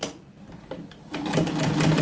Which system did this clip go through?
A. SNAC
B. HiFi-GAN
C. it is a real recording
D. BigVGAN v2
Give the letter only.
C